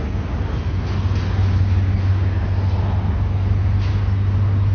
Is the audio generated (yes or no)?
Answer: no